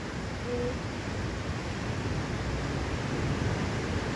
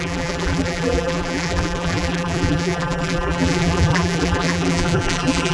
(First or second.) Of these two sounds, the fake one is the second